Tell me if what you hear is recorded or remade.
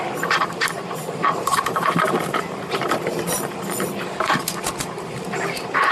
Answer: remade